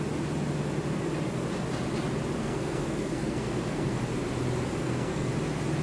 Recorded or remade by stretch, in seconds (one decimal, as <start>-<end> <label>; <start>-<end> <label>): 0.0-2.4 recorded; 2.4-4.0 remade; 4.0-4.8 recorded; 4.8-5.3 remade; 5.3-5.8 recorded